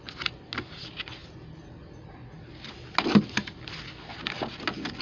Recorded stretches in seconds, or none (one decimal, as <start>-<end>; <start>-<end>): 0.0-5.0